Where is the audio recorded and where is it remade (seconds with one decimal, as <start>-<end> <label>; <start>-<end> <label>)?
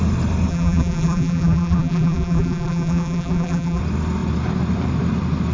0.0-0.5 recorded; 0.5-3.8 remade; 3.8-5.5 recorded